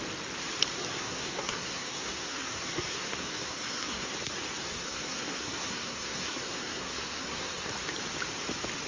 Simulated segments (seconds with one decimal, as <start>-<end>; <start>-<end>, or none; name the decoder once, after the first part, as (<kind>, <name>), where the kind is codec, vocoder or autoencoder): 0.9-4.1 (codec, SNAC); 4.6-7.7